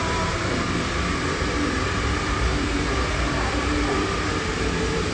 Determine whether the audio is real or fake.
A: fake